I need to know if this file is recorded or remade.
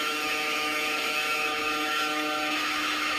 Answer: remade